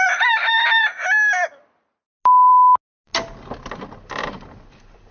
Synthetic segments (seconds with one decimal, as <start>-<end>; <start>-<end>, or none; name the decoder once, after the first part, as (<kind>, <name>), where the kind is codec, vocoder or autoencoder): none